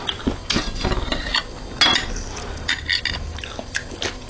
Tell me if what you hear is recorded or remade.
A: recorded